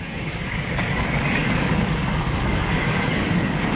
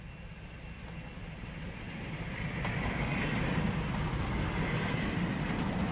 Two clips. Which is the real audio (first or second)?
second